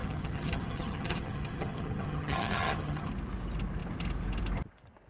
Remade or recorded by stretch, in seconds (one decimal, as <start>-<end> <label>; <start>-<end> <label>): 0.0-3.1 remade; 3.1-5.1 recorded